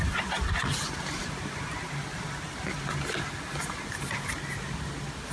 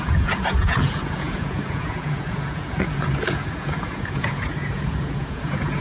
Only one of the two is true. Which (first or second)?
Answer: first